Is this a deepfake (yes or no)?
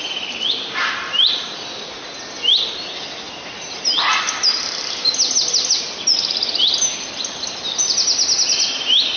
no